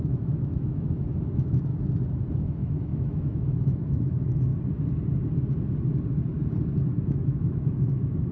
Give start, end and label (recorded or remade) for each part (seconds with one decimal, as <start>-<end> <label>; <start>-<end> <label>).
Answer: 0.0-1.7 remade; 1.7-2.4 recorded; 2.4-4.5 remade; 4.5-7.0 recorded; 7.0-8.3 remade